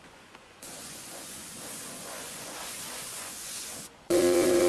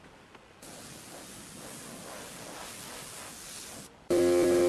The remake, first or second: first